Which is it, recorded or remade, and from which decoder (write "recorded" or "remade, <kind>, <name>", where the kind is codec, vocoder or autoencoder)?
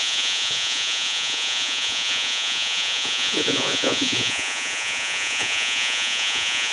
remade, vocoder, Vocos